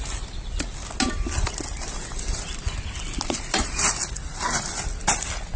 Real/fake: real